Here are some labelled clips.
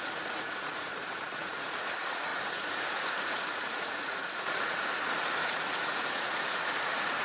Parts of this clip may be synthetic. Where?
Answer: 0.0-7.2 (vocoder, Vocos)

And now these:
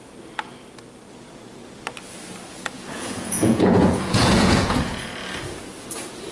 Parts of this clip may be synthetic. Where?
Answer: 2.5-5.0 (vocoder, Vocos)

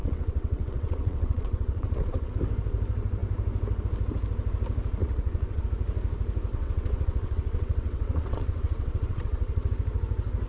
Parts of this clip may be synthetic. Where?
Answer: 0.0-2.3 (vocoder, WaveNeXt); 5.0-5.6; 6.5-9.7

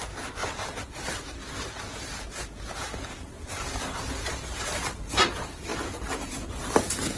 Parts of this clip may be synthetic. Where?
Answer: 0.4-1.2 (vocoder, BigVGAN v2); 3.1-5.2

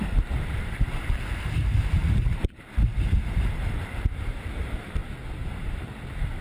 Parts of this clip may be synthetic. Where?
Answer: 0.0-5.0 (vocoder, BigVGAN v2); 5.7-6.4

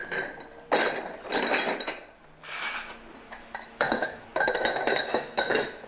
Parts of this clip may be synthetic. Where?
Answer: 3.2-5.9 (autoencoder, DAC-VAE)